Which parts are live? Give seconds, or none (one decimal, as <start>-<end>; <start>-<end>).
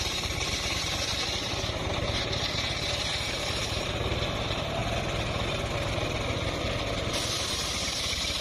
4.8-6.9